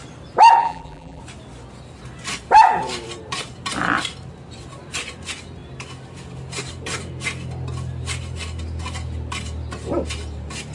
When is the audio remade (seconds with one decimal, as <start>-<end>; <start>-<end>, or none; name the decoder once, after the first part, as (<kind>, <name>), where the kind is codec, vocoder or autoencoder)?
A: 0.6-1.2 (vocoder, BigVGAN v2)